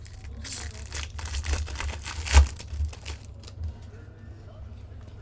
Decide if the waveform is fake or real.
real